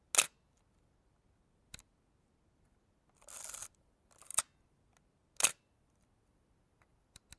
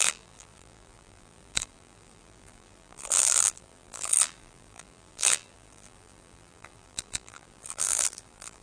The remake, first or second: second